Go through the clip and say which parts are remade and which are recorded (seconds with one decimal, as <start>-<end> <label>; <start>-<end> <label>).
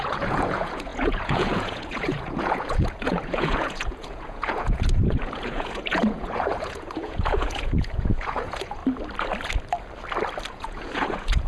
0.0-8.8 remade; 8.8-10.5 recorded; 10.5-11.5 remade